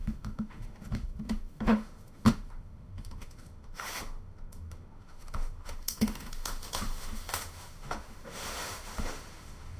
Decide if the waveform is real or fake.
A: fake